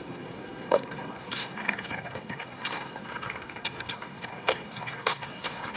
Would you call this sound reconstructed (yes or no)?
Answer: yes